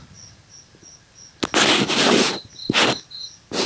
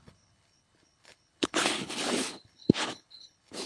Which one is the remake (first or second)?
second